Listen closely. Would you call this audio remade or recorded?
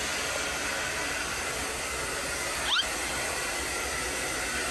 recorded